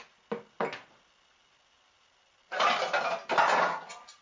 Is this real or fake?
real